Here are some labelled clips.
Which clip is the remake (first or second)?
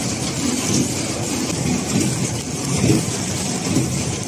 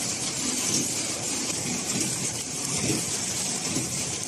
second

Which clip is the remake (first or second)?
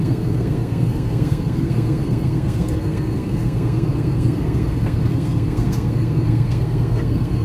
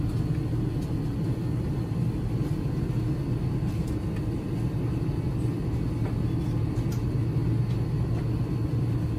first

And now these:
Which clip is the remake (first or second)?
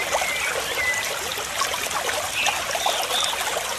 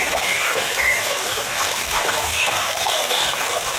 second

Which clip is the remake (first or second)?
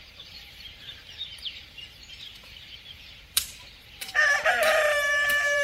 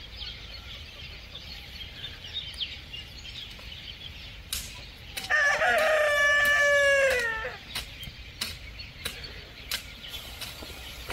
first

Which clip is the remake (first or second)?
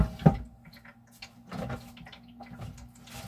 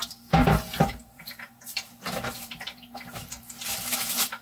second